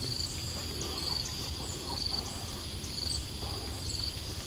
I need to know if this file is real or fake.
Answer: fake